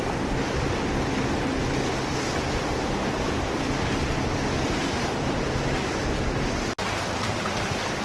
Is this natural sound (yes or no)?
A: yes